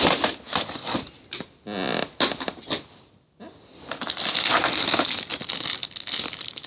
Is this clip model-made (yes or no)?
no